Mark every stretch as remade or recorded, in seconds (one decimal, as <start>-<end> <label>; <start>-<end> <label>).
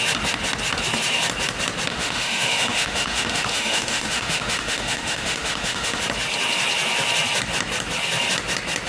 0.0-1.9 recorded; 1.9-6.0 remade; 6.0-8.9 recorded